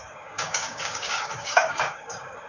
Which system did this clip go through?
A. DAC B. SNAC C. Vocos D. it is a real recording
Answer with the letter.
A